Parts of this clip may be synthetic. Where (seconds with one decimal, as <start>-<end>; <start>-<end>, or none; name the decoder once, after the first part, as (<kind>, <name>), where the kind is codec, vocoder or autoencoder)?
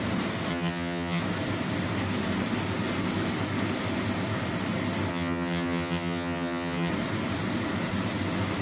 0.5-1.2 (vocoder, HiFi-GAN); 5.1-6.9